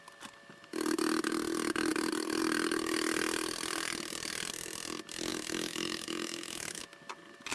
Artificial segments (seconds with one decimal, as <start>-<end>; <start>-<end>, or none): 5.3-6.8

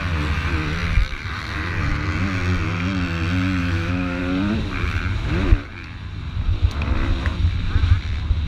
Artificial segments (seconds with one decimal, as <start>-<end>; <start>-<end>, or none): 3.6-4.2

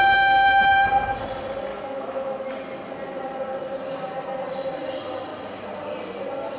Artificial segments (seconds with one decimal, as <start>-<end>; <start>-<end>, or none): 1.7-2.5

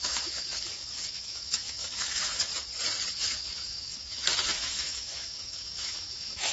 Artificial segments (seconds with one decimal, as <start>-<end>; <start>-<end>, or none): 0.0-2.5; 3.1-6.5

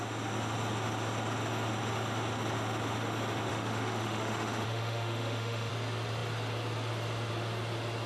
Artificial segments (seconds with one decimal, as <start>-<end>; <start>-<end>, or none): 3.5-5.7

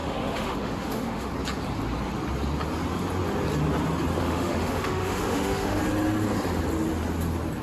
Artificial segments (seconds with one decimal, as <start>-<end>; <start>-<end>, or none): 0.0-1.3; 4.2-5.8